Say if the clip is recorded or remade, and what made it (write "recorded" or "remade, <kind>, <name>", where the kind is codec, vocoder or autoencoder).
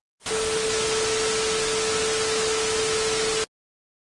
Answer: recorded